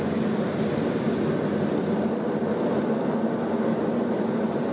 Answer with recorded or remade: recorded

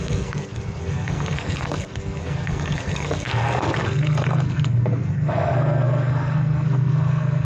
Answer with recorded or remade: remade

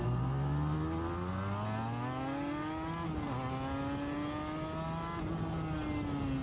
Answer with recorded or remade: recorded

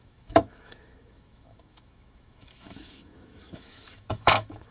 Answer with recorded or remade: remade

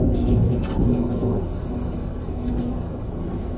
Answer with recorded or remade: remade